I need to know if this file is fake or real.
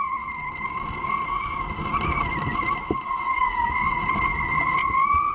real